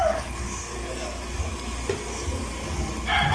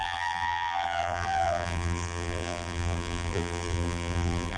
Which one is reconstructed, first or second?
second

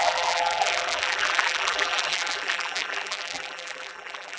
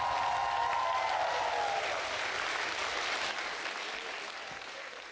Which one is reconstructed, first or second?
first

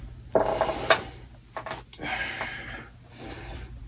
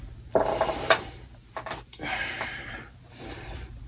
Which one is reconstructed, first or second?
second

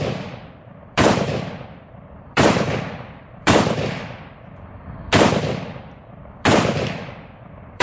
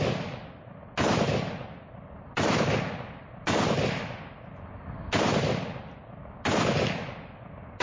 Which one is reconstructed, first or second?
first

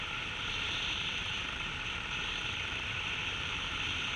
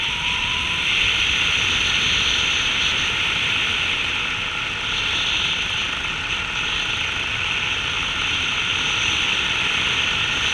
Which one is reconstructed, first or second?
first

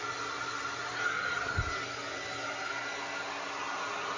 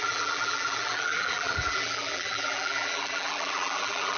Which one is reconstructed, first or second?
second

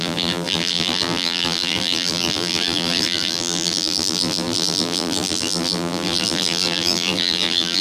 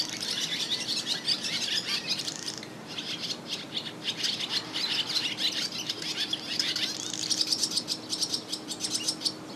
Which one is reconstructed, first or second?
first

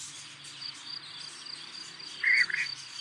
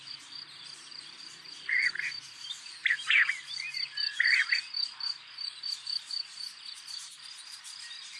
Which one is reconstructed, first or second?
second